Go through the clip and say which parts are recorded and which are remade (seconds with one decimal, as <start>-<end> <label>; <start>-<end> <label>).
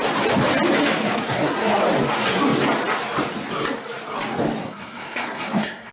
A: 0.0-0.9 recorded; 0.9-1.8 remade; 1.8-4.6 recorded; 4.6-5.9 remade